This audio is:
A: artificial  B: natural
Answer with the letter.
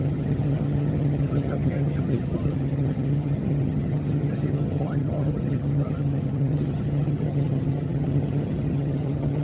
A